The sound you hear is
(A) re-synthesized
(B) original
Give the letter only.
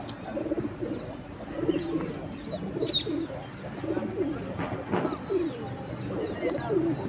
B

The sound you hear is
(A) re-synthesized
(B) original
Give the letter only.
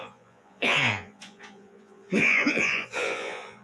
A